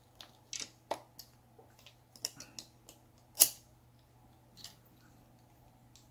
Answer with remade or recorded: recorded